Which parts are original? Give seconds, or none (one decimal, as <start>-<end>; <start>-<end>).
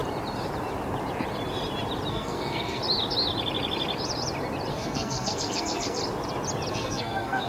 0.0-2.1; 2.8-4.7; 6.0-6.7